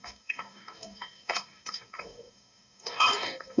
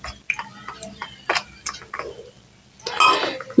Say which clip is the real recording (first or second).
second